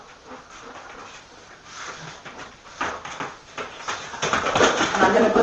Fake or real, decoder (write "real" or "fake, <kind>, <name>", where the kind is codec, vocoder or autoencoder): real